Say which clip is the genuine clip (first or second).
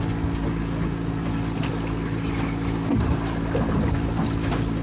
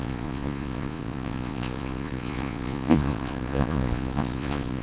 first